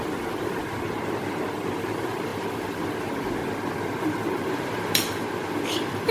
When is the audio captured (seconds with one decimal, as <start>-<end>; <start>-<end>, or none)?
0.6-1.8; 3.4-4.0